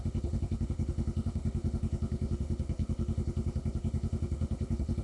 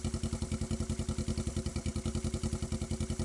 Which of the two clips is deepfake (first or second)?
first